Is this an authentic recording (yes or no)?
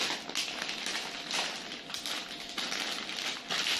yes